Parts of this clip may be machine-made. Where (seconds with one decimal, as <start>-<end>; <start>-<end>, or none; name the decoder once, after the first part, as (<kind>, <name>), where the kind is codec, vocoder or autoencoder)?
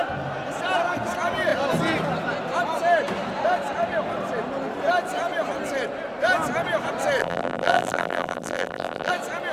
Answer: 7.2-9.1 (vocoder, BigVGAN v2)